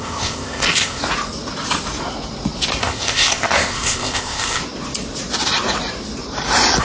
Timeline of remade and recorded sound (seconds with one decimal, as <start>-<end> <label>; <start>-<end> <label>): 0.0-1.0 remade; 1.0-2.8 recorded; 2.8-4.6 remade; 4.6-6.8 recorded